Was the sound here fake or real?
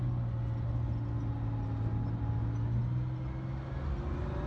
real